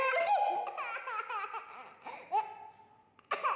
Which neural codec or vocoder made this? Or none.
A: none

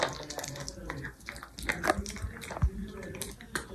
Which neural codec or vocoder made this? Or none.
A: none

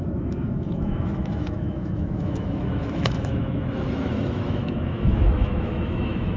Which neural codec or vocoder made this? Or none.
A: autoencoder, DAC-VAE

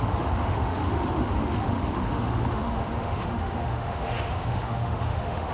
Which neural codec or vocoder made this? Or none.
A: autoencoder, DAC-VAE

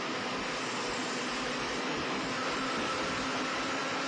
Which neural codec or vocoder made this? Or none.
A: none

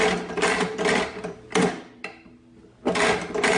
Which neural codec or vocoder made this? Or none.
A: none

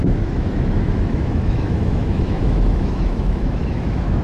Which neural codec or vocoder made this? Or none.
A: autoencoder, DAC-VAE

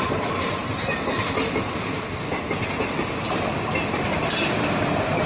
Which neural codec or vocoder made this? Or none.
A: none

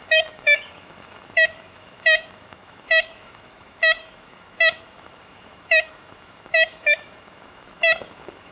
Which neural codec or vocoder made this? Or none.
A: autoencoder, DAC-VAE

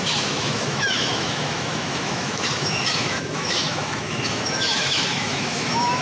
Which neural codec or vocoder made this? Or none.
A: autoencoder, DAC-VAE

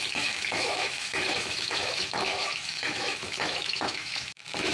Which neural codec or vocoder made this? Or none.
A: autoencoder, DAC-VAE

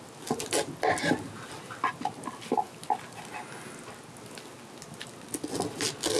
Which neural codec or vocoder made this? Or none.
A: none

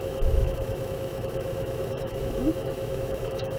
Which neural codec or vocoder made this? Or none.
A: autoencoder, DAC-VAE